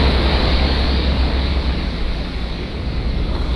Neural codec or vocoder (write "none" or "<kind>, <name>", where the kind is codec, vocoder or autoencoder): codec, DAC